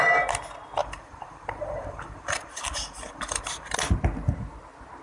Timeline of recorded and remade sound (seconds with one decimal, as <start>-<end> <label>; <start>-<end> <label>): 0.0-0.8 recorded; 0.8-3.8 remade; 3.8-5.0 recorded